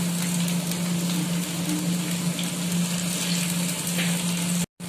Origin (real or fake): real